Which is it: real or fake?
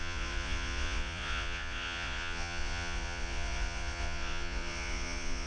fake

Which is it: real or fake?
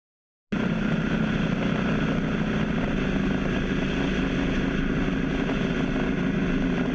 real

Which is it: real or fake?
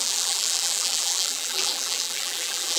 fake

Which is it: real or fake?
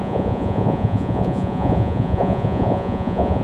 fake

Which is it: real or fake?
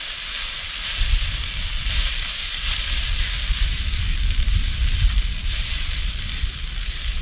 fake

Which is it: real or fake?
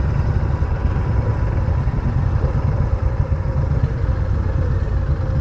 real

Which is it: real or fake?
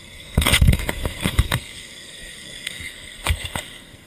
fake